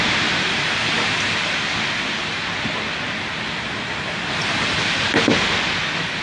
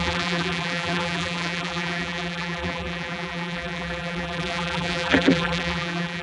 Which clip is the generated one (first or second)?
second